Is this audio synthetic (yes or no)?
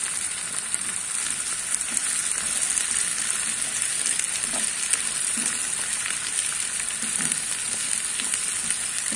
no